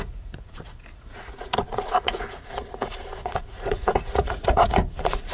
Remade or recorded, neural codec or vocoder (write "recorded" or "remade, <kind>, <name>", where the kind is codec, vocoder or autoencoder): remade, vocoder, Vocos